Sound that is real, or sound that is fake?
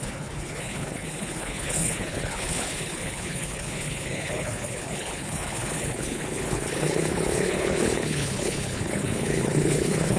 fake